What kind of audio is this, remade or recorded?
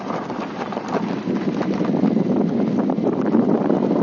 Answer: recorded